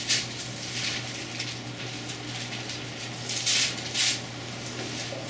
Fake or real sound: real